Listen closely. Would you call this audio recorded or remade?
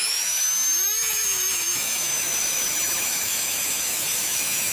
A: remade